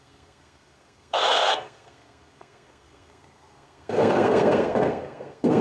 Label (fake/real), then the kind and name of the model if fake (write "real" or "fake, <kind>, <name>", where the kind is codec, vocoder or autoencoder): fake, codec, SNAC